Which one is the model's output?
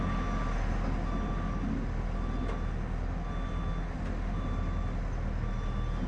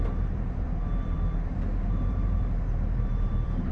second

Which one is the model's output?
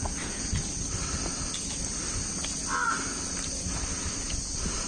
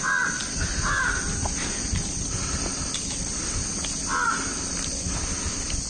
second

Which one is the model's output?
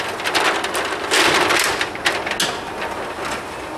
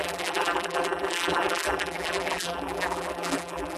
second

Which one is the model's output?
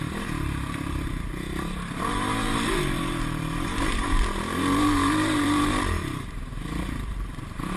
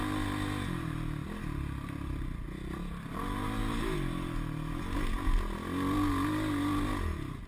first